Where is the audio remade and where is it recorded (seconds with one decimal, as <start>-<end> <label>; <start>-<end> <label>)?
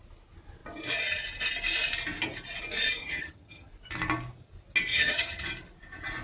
0.0-3.0 recorded; 3.0-3.7 remade; 3.7-4.9 recorded; 4.9-5.5 remade; 5.5-6.2 recorded